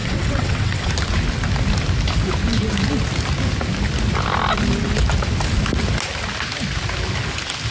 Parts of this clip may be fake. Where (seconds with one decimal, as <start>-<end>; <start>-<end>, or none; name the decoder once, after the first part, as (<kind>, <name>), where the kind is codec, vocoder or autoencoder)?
0.0-0.9 (vocoder, WaveNeXt)